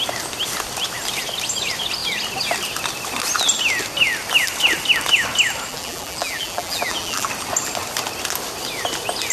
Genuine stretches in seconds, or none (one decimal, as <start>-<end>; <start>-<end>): 0.0-5.7; 7.3-9.3